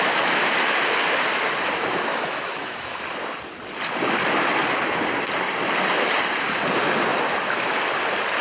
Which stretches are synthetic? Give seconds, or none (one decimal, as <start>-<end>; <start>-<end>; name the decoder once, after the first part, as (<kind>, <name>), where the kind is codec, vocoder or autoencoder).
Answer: 2.1-3.0 (autoencoder, DAC-VAE)